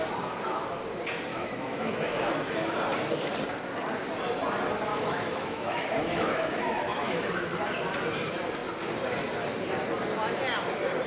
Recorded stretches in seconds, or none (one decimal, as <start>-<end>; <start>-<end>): 0.0-1.3; 2.3-4.9; 7.3-11.1

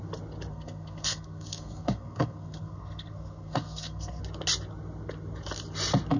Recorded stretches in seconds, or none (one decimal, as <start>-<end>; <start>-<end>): 0.0-0.5; 4.2-6.2

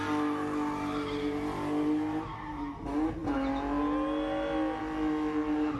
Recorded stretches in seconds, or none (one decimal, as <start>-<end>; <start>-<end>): 0.0-5.8